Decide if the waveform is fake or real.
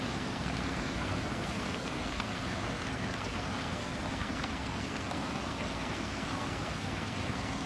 fake